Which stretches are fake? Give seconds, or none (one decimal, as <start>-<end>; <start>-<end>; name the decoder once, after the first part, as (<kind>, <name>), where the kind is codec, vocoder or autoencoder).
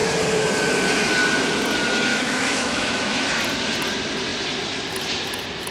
2.1-3.3 (autoencoder, DAC-VAE)